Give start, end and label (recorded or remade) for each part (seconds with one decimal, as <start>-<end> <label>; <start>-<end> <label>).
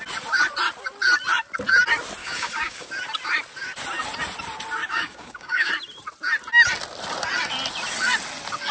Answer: 0.0-2.2 recorded; 2.2-2.9 remade; 2.9-4.8 recorded; 4.8-5.7 remade; 5.7-8.7 recorded